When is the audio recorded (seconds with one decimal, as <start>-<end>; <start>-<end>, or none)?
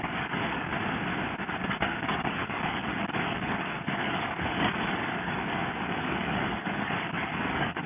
0.7-1.9